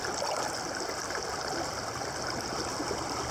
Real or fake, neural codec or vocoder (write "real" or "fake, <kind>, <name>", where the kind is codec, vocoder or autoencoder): real